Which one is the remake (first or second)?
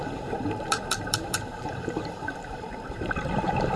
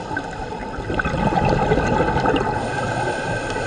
first